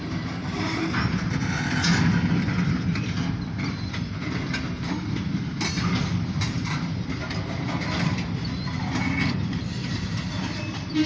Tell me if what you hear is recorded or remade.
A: recorded